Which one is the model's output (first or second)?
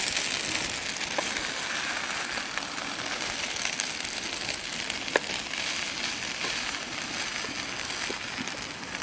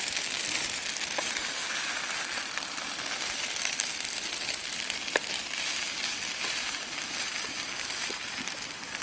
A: second